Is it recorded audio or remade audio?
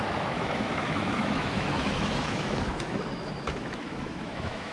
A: remade